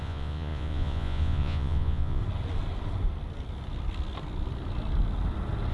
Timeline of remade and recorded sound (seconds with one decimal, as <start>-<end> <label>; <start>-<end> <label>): 0.0-2.2 remade; 2.2-5.7 recorded